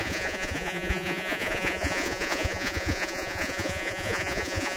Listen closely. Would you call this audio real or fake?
fake